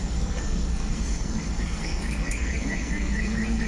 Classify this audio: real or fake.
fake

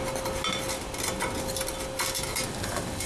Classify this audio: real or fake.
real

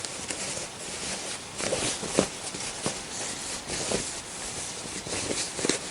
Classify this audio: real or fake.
real